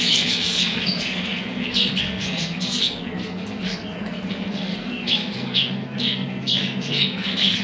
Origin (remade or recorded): remade